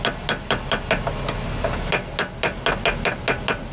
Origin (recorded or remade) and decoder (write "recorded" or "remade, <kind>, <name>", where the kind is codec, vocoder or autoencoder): recorded